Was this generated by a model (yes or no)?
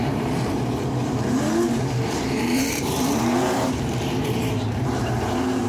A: yes